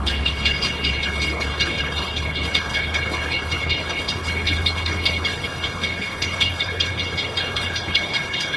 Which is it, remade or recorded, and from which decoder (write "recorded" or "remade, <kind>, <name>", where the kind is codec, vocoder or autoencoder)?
remade, codec, HILCodec